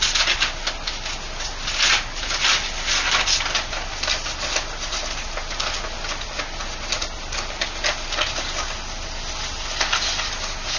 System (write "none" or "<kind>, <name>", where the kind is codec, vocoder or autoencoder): none